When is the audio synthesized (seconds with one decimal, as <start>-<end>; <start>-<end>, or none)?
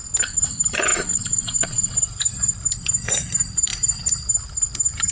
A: 0.9-1.9